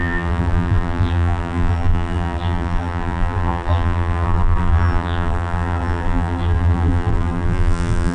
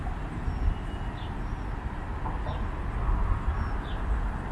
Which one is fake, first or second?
first